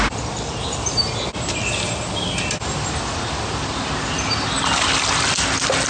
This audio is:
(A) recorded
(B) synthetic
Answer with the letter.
A